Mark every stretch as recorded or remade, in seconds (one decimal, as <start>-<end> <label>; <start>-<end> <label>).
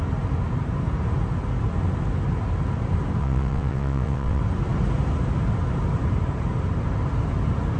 0.0-3.2 recorded; 3.2-4.4 remade; 4.4-7.8 recorded